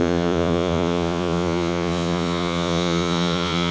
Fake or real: fake